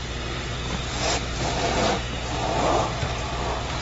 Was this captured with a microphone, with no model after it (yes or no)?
yes